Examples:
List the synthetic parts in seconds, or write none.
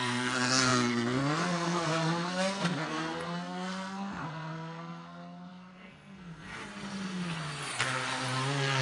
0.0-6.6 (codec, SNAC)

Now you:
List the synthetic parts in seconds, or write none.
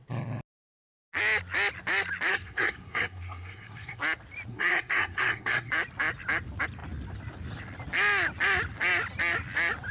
2.3-4.0 (codec, SNAC); 4.5-5.7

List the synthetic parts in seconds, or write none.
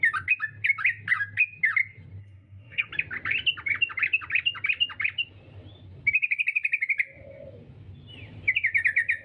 2.2-2.9 (codec, SNAC)